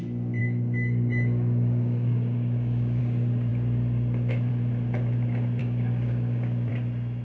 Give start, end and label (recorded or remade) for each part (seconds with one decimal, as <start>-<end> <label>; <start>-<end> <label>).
0.0-0.4 recorded; 0.4-3.0 remade; 3.0-5.6 recorded; 5.6-6.7 remade; 6.7-7.2 recorded